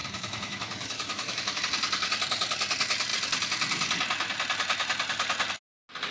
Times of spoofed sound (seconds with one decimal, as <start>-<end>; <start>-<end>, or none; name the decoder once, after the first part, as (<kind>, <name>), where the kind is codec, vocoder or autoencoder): 0.0-1.6 (autoencoder, DAC-VAE)

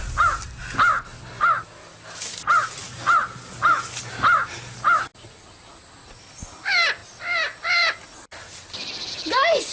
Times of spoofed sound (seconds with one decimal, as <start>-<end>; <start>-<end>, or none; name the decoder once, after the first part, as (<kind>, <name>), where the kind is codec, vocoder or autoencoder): none

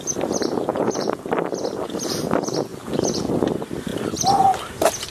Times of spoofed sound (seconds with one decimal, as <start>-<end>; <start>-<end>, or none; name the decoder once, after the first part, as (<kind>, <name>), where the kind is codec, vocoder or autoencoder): 0.7-1.2 (vocoder, Vocos); 2.7-3.3